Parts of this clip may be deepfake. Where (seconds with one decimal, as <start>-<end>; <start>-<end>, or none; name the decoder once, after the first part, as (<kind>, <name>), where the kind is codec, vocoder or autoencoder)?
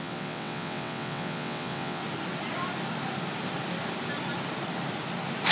0.0-2.0 (vocoder, WaveNeXt)